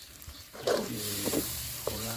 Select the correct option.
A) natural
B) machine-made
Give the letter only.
B